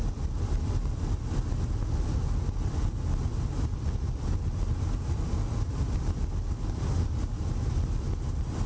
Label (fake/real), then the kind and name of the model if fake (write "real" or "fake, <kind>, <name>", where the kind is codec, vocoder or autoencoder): real